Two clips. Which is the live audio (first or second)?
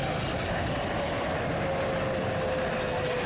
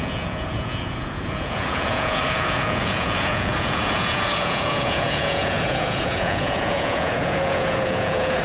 first